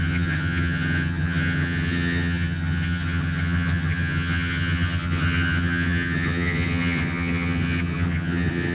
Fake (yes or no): yes